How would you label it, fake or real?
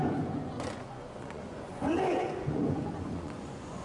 fake